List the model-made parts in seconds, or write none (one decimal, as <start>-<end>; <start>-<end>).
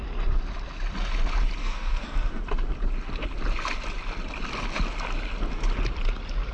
1.6-2.4